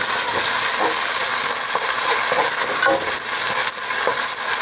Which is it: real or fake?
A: real